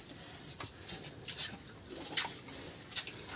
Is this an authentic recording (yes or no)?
yes